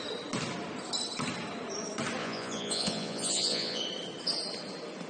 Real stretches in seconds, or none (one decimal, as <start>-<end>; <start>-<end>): 0.0-2.2; 3.8-5.1